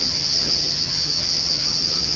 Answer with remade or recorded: remade